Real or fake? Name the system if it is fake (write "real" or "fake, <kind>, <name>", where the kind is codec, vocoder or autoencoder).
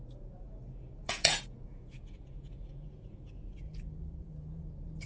fake, vocoder, Vocos